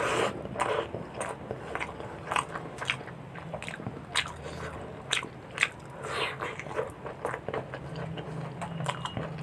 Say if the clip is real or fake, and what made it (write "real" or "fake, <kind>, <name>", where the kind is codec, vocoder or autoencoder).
real